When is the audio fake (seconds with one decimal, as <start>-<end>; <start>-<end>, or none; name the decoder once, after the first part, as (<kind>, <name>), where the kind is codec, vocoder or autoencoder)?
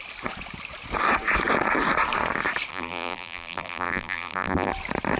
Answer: 2.7-4.7 (vocoder, BigVGAN v2)